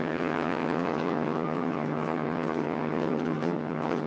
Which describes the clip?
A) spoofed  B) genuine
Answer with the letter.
A